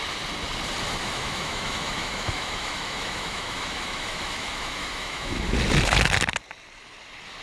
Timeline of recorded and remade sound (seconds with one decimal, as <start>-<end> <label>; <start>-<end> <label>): 0.0-1.0 recorded; 1.0-5.4 remade; 5.4-7.4 recorded